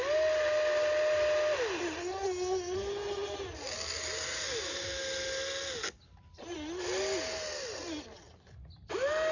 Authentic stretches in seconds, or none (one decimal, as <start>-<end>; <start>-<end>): 0.0-9.3